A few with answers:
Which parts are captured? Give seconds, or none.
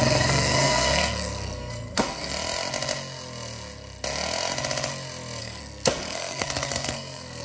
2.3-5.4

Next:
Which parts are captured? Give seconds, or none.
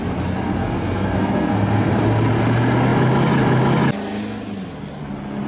0.0-0.6; 1.9-5.5